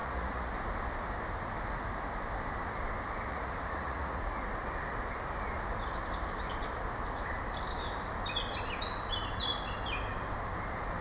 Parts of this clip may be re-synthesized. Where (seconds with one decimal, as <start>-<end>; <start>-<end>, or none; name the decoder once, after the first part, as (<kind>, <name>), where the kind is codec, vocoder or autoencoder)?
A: 0.0-0.5 (vocoder, Vocos); 3.3-4.2